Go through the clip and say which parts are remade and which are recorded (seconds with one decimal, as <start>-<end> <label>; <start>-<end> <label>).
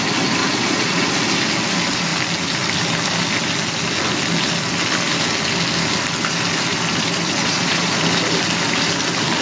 0.0-0.4 recorded; 0.4-1.0 remade; 1.0-7.4 recorded; 7.4-8.0 remade; 8.0-9.4 recorded